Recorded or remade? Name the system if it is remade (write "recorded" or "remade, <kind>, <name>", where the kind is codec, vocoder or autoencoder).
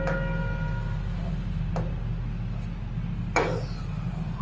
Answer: recorded